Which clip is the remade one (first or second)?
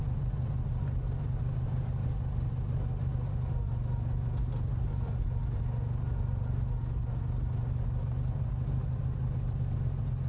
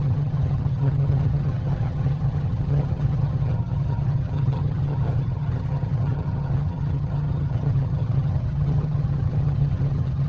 second